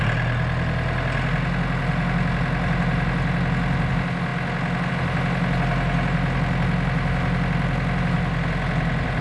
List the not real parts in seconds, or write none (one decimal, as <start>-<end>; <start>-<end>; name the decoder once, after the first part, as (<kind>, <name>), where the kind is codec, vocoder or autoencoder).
none